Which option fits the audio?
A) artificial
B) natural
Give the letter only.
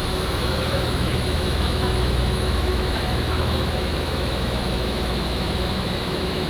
A